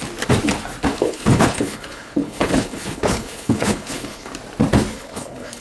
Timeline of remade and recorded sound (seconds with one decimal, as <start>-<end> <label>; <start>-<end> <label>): 0.0-0.9 recorded; 0.9-4.3 remade; 4.3-4.9 recorded; 4.9-5.6 remade

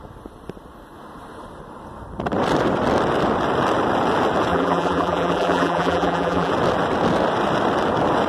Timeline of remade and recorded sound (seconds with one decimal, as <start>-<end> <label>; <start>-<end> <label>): 0.0-4.5 recorded; 4.5-6.5 remade; 6.5-8.3 recorded

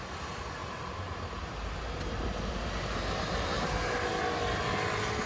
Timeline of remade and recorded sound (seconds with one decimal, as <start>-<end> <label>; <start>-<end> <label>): 0.0-0.6 recorded; 0.6-3.7 remade; 3.7-5.3 recorded

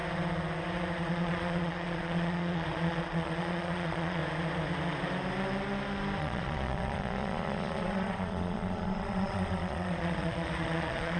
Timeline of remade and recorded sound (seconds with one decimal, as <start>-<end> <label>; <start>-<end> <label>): 0.0-1.1 recorded; 1.1-4.2 remade; 4.2-6.2 recorded; 6.2-11.2 remade

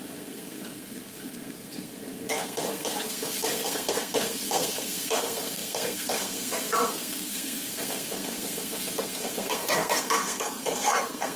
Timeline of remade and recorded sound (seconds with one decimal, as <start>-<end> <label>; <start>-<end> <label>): 0.0-11.4 remade